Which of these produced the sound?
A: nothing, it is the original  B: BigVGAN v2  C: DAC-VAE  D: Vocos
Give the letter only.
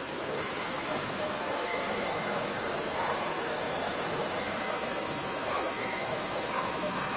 C